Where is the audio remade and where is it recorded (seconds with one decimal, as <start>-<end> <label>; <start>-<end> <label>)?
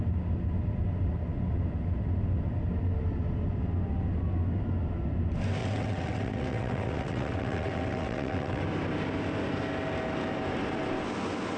0.0-5.6 recorded; 5.6-8.6 remade; 8.6-11.6 recorded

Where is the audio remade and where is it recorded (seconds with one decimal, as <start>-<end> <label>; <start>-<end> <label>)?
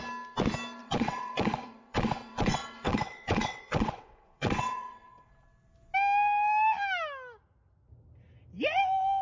0.0-0.8 recorded; 0.8-5.3 remade; 5.3-9.2 recorded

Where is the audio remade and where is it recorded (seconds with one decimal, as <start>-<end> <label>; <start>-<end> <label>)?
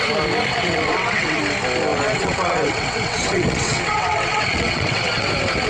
0.0-0.5 recorded; 0.5-1.4 remade; 1.4-1.9 recorded; 1.9-5.3 remade; 5.3-5.7 recorded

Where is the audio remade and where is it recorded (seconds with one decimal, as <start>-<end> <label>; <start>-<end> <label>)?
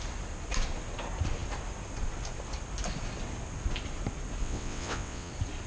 0.0-4.4 recorded; 4.4-5.3 remade; 5.3-5.7 recorded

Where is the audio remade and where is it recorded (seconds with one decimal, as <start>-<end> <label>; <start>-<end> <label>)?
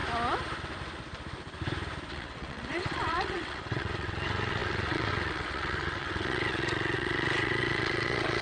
0.0-2.1 recorded; 2.1-8.4 remade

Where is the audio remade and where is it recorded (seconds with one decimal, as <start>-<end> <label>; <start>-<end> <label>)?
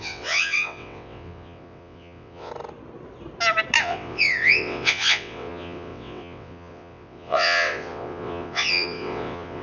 0.0-2.5 remade; 2.5-3.8 recorded; 3.8-9.6 remade